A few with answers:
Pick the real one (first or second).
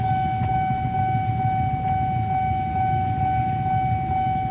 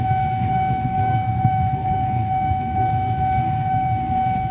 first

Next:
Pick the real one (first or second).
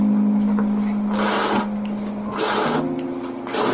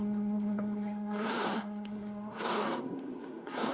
first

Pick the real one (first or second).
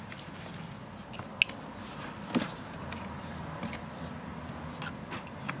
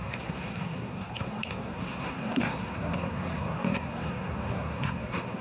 first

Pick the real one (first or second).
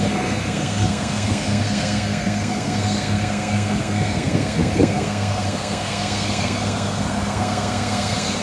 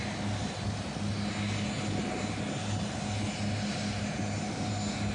second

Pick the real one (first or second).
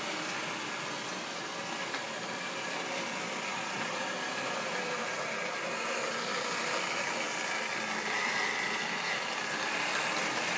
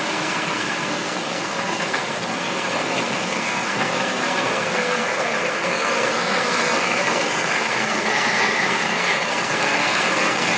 first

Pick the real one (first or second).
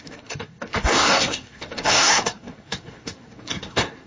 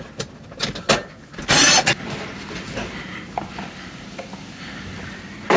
second